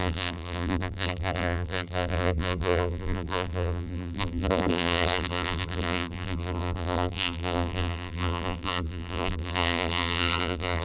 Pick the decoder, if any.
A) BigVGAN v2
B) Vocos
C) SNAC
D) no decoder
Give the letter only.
A